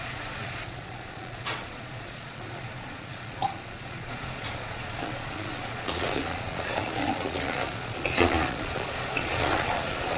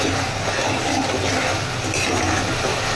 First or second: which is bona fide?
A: second